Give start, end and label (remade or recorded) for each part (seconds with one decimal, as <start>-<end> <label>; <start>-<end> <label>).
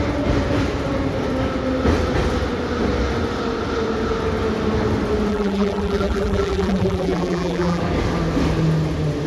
0.0-5.3 recorded; 5.3-7.8 remade; 7.8-9.3 recorded